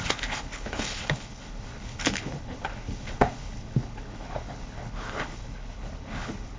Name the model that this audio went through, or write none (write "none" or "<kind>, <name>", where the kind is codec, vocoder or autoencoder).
codec, HILCodec